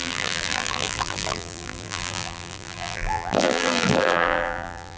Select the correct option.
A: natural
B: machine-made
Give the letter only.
B